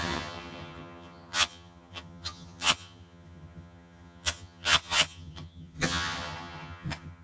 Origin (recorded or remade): remade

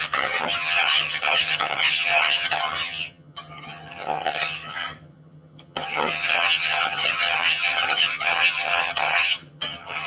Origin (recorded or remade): remade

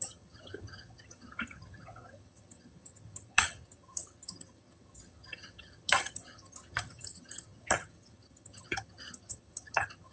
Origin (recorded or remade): remade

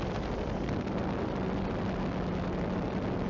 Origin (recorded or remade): recorded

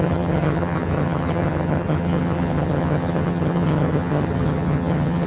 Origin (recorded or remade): remade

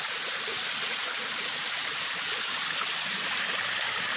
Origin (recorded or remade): recorded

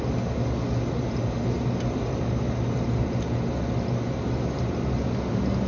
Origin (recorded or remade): recorded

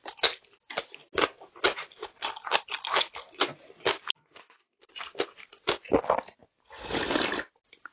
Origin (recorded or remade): recorded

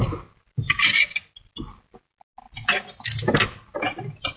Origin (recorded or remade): recorded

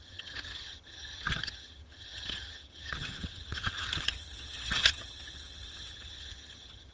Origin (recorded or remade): remade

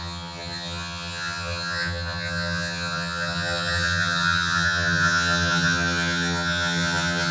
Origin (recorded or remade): remade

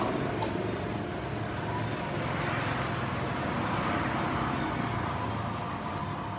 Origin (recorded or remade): recorded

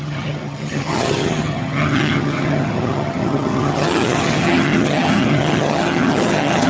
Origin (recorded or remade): remade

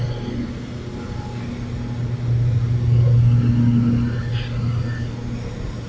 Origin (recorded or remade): recorded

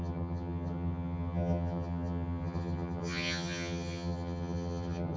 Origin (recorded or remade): remade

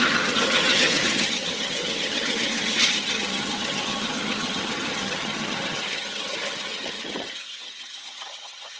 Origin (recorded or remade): remade